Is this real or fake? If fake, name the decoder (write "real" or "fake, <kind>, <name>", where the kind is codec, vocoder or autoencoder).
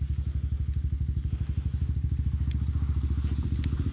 real